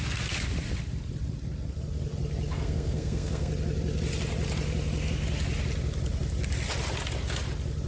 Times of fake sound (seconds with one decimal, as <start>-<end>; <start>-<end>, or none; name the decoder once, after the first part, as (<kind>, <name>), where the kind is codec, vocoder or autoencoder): 2.5-3.5 (codec, SNAC)